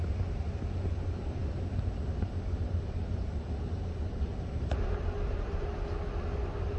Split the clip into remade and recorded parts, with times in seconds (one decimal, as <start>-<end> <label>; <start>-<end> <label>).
0.0-6.8 recorded